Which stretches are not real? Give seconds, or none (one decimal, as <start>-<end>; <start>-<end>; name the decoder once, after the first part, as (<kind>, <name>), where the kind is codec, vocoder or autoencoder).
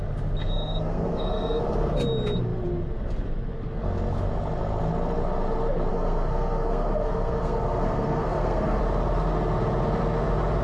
0.4-1.6 (codec, SNAC); 5.9-8.8